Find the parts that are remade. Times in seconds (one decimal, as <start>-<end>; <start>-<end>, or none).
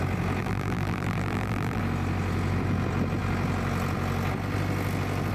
0.4-1.8